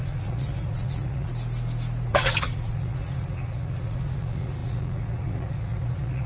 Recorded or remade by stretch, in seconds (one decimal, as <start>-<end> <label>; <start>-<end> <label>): 0.0-1.3 remade; 1.3-2.1 recorded; 2.1-6.3 remade